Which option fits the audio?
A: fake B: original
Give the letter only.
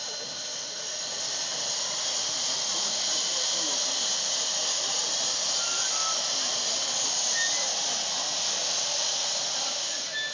B